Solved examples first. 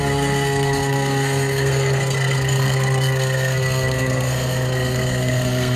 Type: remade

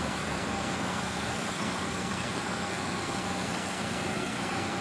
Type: remade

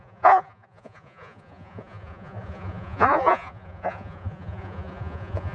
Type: remade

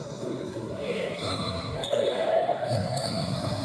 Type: remade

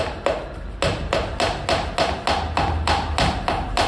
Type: recorded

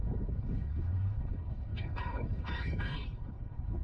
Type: remade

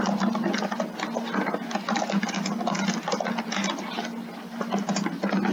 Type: recorded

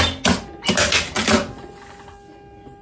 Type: recorded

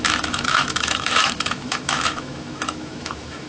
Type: remade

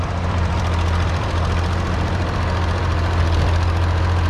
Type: remade